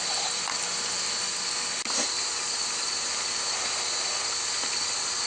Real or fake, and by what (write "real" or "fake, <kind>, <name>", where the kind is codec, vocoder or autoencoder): real